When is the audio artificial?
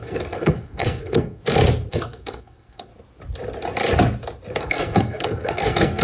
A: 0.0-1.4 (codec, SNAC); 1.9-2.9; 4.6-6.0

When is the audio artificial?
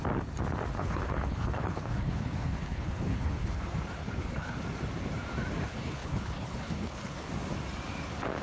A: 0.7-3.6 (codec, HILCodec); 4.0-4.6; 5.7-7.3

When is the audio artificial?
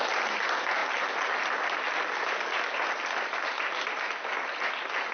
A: none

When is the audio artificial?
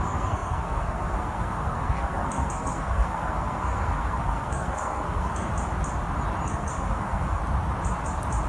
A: 0.0-5.5 (codec, SNAC); 6.5-7.4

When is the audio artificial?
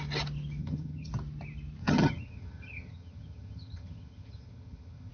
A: 0.6-1.1 (vocoder, HiFi-GAN); 1.8-5.1